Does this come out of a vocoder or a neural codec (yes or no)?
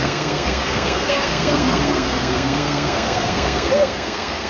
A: yes